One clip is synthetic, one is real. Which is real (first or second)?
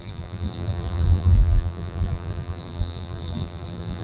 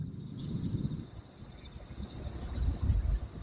second